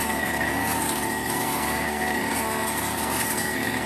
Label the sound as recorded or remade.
remade